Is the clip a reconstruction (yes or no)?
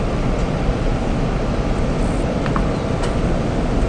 no